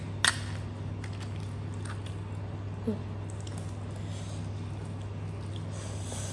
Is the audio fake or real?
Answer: real